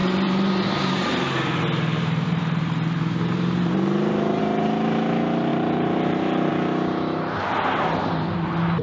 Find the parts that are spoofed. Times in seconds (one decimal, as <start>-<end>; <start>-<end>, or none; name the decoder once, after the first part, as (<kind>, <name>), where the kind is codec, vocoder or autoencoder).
0.0-4.4 (vocoder, BigVGAN v2); 5.5-6.5